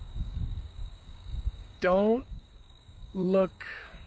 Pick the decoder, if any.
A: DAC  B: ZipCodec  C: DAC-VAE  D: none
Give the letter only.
A